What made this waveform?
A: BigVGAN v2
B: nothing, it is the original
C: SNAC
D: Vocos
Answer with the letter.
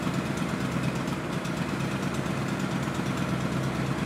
B